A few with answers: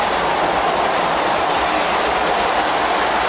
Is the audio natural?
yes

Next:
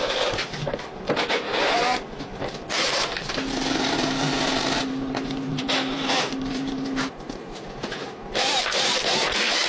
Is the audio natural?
no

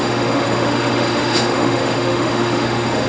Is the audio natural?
no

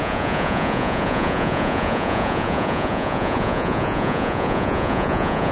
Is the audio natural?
no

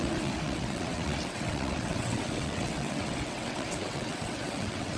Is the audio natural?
no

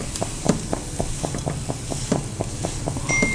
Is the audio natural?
yes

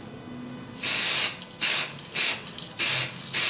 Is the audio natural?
yes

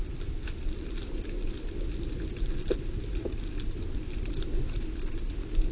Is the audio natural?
yes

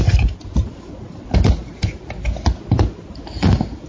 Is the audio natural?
yes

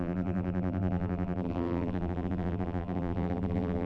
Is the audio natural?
no